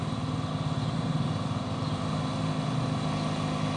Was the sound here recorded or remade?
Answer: recorded